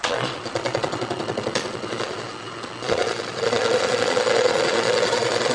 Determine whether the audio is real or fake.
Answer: fake